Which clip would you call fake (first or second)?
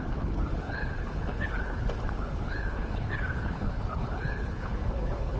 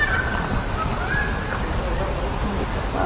first